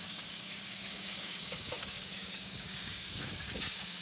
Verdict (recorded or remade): remade